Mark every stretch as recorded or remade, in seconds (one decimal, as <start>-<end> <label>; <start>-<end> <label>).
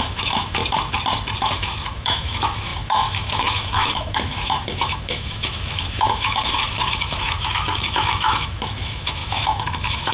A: 0.0-0.6 remade; 0.6-1.4 recorded; 1.4-10.1 remade